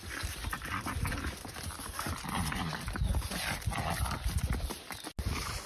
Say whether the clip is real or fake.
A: real